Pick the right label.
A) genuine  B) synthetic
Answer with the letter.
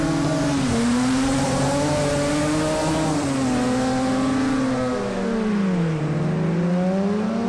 A